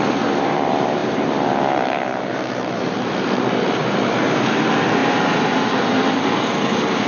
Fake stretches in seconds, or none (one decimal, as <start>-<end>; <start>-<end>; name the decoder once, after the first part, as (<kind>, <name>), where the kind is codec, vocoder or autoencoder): 0.0-7.1 (vocoder, BigVGAN v2)